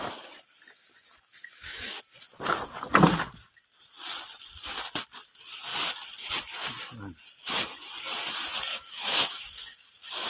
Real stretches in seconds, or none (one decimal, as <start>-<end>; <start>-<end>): 0.0-1.1; 1.9-8.7